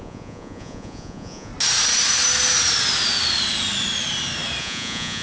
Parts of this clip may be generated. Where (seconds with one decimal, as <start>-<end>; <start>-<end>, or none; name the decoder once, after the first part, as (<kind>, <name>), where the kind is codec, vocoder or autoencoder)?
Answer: 0.0-1.5 (vocoder, Vocos); 4.6-5.2